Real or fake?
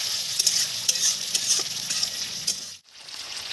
fake